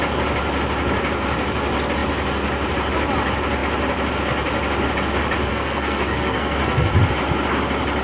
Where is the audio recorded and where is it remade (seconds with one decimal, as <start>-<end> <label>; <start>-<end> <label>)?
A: 0.0-5.5 recorded; 5.5-6.9 remade; 6.9-8.0 recorded